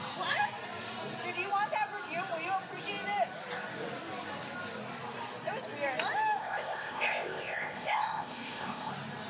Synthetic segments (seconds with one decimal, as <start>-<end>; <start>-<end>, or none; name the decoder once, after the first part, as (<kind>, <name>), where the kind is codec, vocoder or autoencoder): 6.4-8.9 (codec, ZipCodec)